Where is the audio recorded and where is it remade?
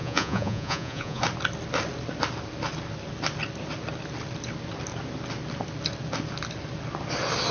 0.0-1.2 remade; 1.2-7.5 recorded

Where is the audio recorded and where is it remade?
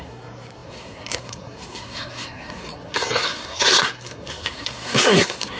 0.0-5.6 remade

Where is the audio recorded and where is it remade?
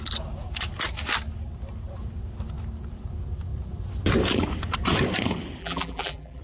0.0-5.6 recorded; 5.6-6.4 remade